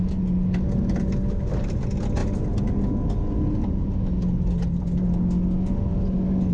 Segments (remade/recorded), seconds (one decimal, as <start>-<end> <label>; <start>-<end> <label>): 0.0-6.5 recorded